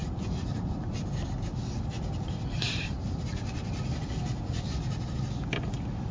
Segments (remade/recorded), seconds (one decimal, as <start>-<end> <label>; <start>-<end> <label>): 0.0-6.1 recorded